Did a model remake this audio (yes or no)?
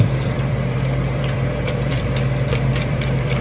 yes